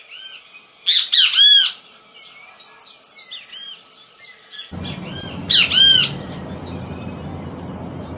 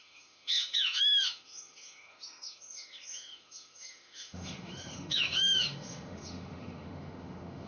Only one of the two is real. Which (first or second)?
first